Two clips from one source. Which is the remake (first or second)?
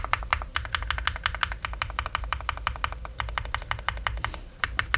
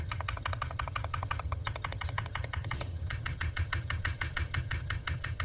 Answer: second